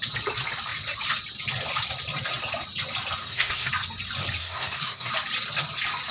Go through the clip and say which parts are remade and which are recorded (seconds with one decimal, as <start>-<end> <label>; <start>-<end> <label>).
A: 0.0-3.2 recorded; 3.2-3.7 remade; 3.7-4.4 recorded; 4.4-5.1 remade; 5.1-6.1 recorded